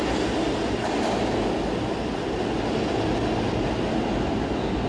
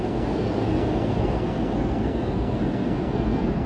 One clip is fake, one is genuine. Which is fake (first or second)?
second